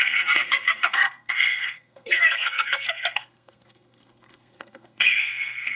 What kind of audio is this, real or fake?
fake